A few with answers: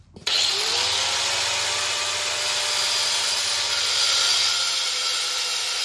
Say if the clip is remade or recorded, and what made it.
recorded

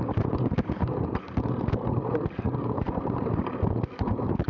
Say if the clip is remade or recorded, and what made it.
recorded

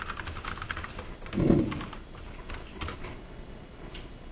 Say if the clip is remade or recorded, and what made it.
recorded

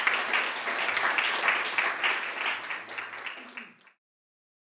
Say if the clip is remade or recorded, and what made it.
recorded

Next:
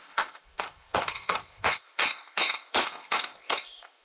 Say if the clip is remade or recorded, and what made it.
remade, codec, ZipCodec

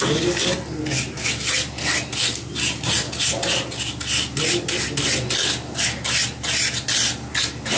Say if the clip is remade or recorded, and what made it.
recorded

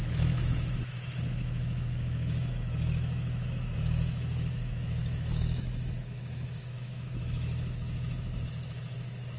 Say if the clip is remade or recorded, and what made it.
remade, autoencoder, DAC-VAE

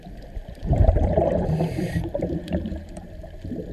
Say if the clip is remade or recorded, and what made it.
remade, vocoder, BigVGAN v2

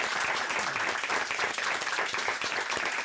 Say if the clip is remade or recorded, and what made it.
remade, vocoder, BigVGAN v2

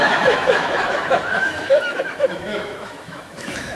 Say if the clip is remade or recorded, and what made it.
remade, autoencoder, DAC-VAE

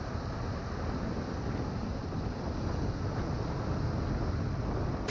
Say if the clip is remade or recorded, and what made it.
recorded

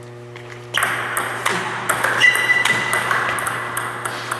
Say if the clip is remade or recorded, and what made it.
recorded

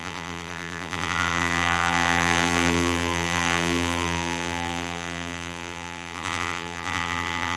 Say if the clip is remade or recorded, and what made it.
remade, vocoder, BigVGAN v2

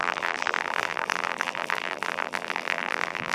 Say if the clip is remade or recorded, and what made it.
remade, vocoder, BigVGAN v2